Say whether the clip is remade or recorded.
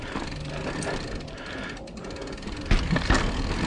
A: recorded